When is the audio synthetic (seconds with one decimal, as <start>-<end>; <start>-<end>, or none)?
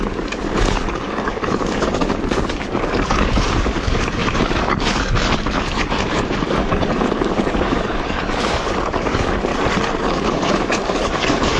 0.0-9.5; 10.0-11.6